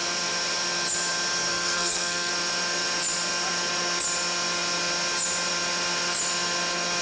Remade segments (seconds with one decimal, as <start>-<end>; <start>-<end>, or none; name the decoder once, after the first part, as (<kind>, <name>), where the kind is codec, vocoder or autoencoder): 1.5-2.3 (codec, SNAC)

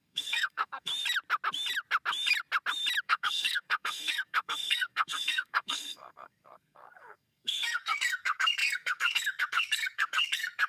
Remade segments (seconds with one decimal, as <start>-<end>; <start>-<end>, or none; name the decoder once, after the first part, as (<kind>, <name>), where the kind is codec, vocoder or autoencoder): 0.0-0.9 (codec, SNAC); 3.0-10.7

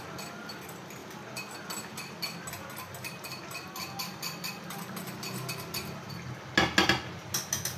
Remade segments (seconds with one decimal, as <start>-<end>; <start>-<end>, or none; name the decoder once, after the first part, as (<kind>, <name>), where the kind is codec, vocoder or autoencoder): none

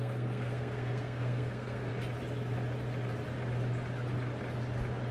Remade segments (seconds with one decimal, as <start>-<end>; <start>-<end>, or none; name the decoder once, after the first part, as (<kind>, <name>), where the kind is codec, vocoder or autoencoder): 0.0-1.9 (codec, SNAC)

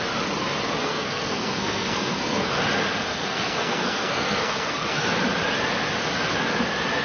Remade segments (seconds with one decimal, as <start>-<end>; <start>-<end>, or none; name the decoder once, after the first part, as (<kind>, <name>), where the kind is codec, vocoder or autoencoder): 0.8-2.6 (codec, SNAC); 3.1-5.2

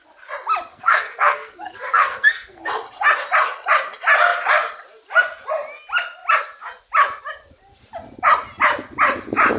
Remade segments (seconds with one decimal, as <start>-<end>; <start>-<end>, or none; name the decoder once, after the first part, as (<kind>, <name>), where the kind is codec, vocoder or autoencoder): 0.7-2.6 (codec, SNAC)

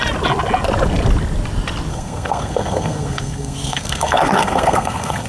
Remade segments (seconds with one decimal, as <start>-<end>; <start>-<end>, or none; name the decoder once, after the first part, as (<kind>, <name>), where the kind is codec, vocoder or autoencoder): 1.9-5.3 (codec, SNAC)

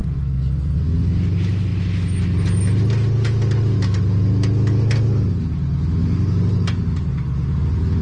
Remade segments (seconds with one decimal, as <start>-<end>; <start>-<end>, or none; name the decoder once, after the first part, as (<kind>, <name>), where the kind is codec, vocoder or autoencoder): 0.0-1.1 (codec, SNAC)